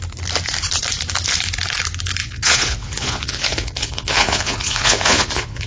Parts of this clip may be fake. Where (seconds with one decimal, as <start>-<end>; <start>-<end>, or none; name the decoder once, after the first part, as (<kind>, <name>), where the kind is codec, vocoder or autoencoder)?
2.2-5.7 (vocoder, Vocos)